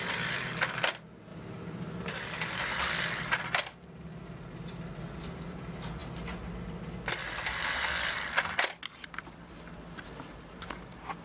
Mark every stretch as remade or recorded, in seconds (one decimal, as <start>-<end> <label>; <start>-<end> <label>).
0.0-11.2 recorded